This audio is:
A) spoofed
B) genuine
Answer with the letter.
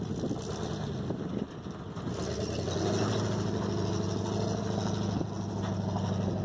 B